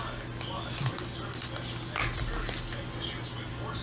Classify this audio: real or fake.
real